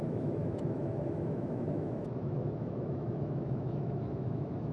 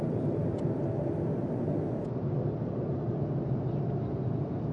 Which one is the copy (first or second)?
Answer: first